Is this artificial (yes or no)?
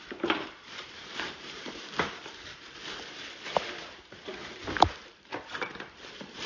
yes